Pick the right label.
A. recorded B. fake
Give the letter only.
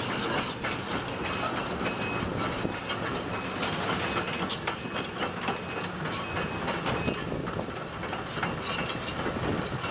A